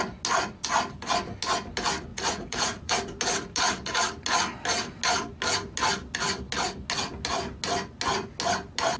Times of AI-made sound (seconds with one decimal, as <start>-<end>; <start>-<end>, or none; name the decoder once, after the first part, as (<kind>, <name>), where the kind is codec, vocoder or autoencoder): 2.1-2.9 (vocoder, Vocos)